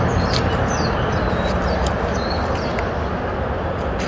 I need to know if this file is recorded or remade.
recorded